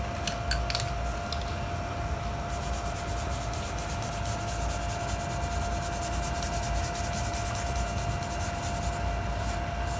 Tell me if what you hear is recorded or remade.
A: recorded